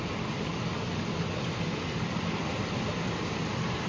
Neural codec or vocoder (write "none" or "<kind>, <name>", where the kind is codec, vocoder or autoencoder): none